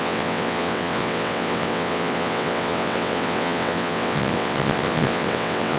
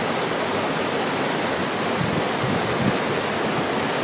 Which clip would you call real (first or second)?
second